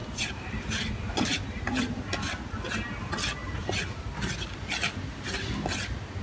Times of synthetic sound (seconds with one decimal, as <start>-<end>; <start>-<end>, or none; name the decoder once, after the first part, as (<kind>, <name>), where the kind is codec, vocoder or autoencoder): 0.0-2.0 (vocoder, BigVGAN v2); 3.4-3.9